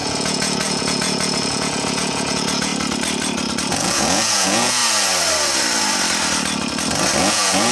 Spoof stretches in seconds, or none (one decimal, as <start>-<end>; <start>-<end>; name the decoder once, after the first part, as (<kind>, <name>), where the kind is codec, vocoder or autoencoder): 0.0-2.7 (vocoder, Vocos); 3.7-4.8; 7.2-7.7